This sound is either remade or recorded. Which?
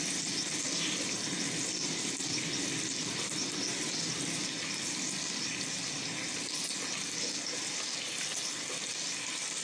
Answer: recorded